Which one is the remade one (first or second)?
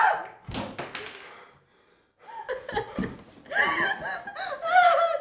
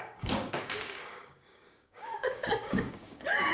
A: second